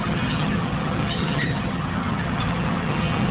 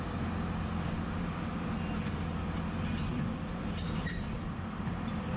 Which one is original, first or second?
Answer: second